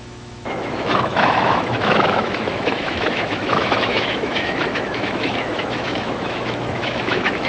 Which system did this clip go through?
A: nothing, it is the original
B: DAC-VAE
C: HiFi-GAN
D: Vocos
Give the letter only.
B